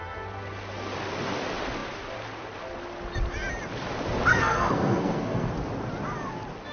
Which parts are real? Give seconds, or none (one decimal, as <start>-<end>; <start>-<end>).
0.0-4.3; 5.5-6.7